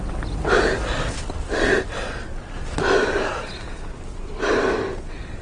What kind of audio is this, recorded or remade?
recorded